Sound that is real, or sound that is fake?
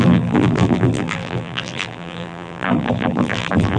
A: fake